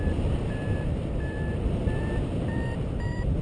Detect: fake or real fake